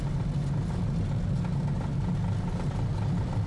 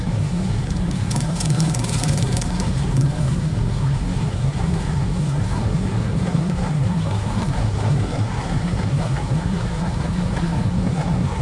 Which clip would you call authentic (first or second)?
first